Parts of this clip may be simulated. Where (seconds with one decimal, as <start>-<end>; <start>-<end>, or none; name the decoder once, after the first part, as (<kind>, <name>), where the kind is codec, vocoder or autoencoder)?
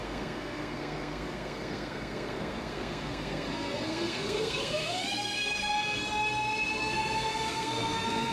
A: 0.0-6.0 (codec, SNAC); 6.8-8.3